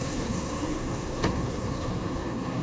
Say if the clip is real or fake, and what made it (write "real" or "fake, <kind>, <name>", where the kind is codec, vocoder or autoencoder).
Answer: fake, codec, SNAC